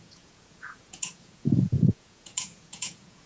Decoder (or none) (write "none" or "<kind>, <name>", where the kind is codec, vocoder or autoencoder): vocoder, Vocos